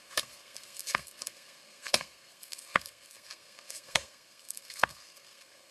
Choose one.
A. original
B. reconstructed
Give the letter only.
B